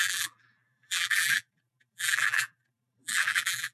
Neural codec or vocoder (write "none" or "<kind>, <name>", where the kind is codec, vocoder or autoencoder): vocoder, BigVGAN v2